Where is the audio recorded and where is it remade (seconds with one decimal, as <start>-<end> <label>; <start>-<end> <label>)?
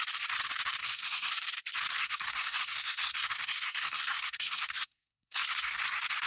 0.0-0.8 recorded; 0.8-1.3 remade; 1.3-2.0 recorded; 2.0-5.8 remade; 5.8-6.3 recorded